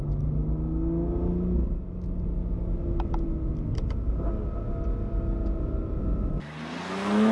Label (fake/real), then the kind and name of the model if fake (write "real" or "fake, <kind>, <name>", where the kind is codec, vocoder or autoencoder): real